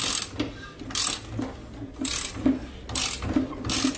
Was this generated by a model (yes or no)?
no